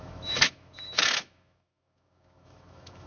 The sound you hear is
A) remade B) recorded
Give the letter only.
A